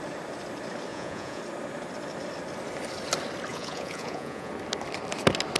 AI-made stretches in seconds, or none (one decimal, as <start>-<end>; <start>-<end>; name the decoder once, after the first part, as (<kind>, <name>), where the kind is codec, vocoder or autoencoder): 0.9-1.4 (vocoder, Vocos); 3.5-4.5